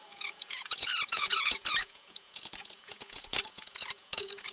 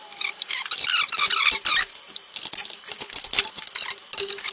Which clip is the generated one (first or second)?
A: first